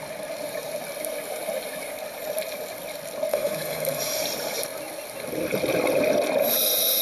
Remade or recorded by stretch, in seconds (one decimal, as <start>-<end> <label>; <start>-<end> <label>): 0.0-3.3 recorded; 3.3-4.2 remade; 4.2-7.0 recorded